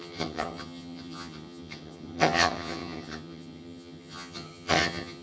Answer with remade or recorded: remade